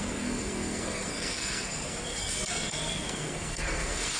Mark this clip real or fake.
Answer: fake